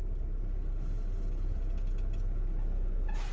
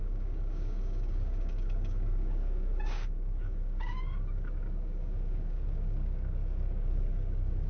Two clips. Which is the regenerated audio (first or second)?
second